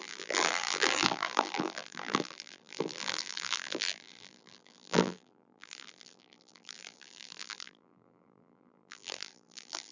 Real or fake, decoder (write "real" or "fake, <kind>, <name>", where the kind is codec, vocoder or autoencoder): fake, vocoder, BigVGAN v2